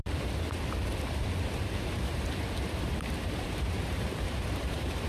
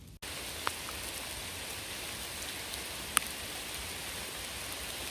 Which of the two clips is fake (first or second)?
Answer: first